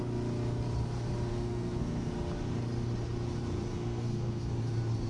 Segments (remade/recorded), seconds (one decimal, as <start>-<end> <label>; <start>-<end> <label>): 0.0-1.3 recorded; 1.3-2.1 remade; 2.1-3.7 recorded; 3.7-4.5 remade; 4.5-5.1 recorded